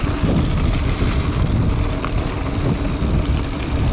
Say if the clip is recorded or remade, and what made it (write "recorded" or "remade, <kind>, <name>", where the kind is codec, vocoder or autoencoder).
recorded